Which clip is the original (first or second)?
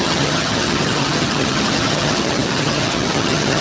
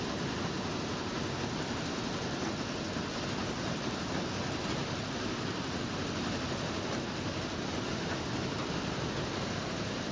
second